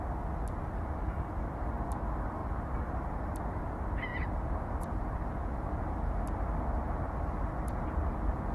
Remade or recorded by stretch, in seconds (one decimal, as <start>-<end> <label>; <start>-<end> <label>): 0.0-4.1 recorded; 4.1-7.1 remade; 7.1-8.5 recorded

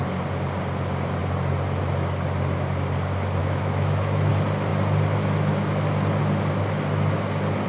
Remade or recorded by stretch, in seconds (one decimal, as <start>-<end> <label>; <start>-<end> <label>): 0.0-3.4 recorded; 3.4-4.3 remade; 4.3-7.7 recorded

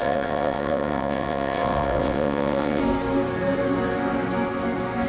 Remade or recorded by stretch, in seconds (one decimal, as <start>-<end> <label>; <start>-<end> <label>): 0.0-2.8 remade; 2.8-5.1 recorded

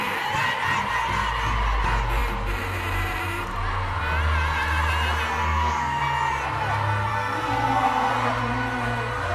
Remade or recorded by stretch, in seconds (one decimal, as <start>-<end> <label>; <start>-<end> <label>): 0.0-5.4 recorded; 5.4-6.0 remade; 6.0-7.1 recorded; 7.1-8.1 remade; 8.1-9.3 recorded

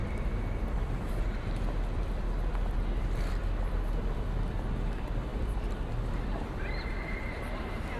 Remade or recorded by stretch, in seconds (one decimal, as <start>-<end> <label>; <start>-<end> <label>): 0.0-8.0 remade

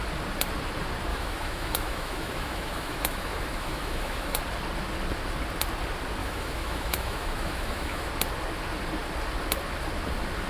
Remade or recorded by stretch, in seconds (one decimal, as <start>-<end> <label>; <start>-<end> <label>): 0.0-1.1 recorded; 1.1-4.4 remade; 4.4-6.2 recorded; 6.2-8.1 remade; 8.1-10.5 recorded

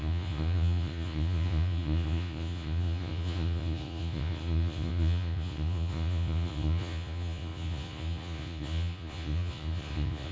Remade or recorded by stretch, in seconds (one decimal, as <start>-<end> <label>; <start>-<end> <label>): 0.0-10.3 remade

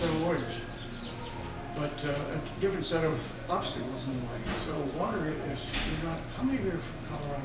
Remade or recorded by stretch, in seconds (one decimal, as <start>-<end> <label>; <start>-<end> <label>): 0.0-3.1 recorded; 3.1-5.6 remade; 5.6-7.4 recorded